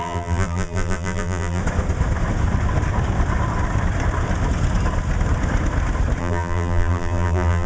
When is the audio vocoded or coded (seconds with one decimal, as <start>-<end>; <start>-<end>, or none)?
0.0-1.6; 6.2-7.7